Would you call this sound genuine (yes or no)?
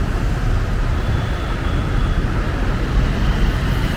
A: yes